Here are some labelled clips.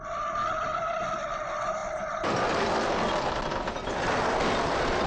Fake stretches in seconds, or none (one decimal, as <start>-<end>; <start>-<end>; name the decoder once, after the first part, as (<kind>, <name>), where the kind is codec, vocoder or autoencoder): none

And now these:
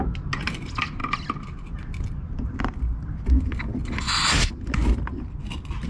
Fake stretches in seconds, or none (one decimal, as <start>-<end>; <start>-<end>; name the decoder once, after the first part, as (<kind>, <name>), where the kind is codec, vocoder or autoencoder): none

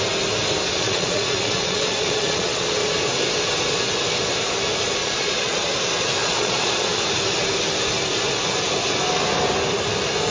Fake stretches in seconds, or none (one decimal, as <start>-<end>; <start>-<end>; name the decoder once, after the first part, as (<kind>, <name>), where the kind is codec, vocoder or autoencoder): 0.7-2.7 (vocoder, Vocos); 5.0-5.7; 6.2-7.0

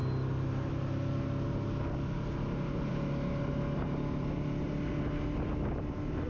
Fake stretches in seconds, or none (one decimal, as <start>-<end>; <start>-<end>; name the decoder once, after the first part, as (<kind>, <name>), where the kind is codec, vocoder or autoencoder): none